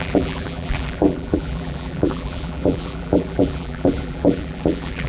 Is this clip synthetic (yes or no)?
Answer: yes